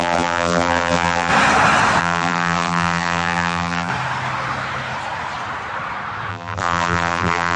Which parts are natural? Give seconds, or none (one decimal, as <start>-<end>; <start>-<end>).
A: 1.3-2.0; 3.9-6.3

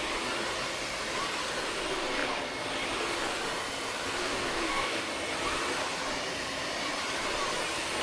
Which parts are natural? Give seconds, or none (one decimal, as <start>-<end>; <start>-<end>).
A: 0.0-4.2; 5.1-8.0